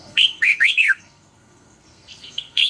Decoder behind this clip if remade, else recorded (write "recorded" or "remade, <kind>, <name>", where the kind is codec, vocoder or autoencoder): remade, codec, SNAC